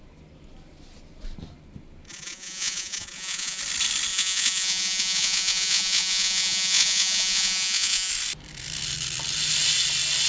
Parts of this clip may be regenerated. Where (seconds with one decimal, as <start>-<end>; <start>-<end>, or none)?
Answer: 2.1-3.6; 4.1-8.1